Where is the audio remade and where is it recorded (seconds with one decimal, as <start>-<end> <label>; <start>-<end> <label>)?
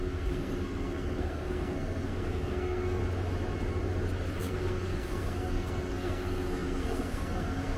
0.0-3.0 remade; 3.0-4.4 recorded; 4.4-7.8 remade